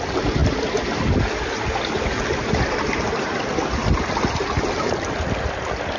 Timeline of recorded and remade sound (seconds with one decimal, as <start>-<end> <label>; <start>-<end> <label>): 0.0-6.0 recorded